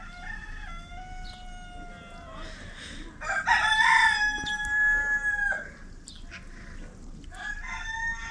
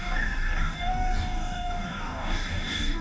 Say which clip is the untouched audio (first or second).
first